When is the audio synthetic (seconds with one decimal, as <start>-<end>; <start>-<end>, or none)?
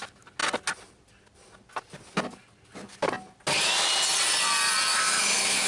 4.9-5.7